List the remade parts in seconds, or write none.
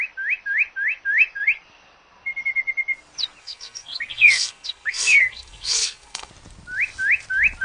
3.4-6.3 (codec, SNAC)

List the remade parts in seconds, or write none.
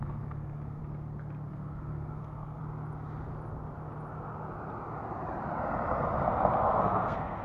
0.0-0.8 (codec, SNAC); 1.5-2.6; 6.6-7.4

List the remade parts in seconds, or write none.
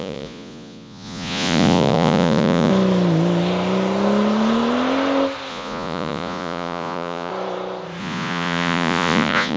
0.0-2.7 (vocoder, Vocos); 5.5-7.3; 8.0-9.6